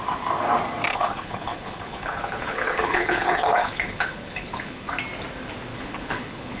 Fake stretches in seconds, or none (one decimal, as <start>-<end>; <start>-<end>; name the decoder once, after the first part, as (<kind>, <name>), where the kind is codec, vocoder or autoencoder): 0.9-4.9 (codec, HILCodec); 5.7-6.6